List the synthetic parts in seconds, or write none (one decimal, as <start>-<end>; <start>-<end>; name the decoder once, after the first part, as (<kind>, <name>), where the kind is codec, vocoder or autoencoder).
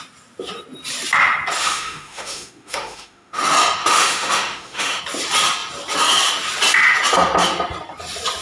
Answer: 1.6-3.4 (autoencoder, DAC-VAE); 3.8-5.0